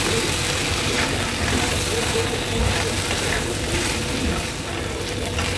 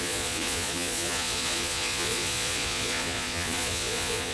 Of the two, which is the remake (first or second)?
second